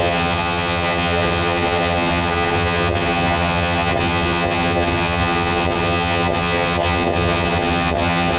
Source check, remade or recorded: remade